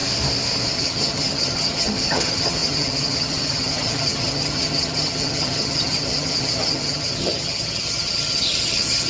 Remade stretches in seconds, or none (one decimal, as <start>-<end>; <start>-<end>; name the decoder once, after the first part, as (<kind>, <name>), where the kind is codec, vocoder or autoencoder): 0.7-9.1 (vocoder, HiFi-GAN)